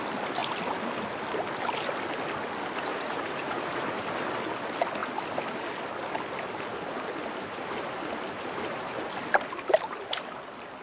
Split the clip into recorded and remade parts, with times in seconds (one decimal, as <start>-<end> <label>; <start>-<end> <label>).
0.0-2.9 recorded; 2.9-4.0 remade; 4.0-10.8 recorded